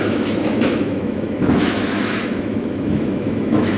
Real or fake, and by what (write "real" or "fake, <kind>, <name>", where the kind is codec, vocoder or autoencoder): fake, autoencoder, DAC-VAE